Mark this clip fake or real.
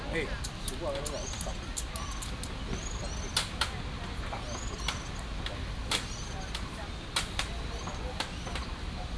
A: real